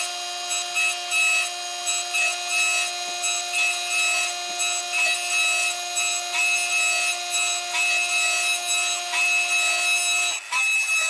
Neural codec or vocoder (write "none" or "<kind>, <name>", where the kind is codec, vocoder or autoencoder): none